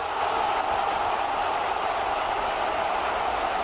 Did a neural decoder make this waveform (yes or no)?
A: no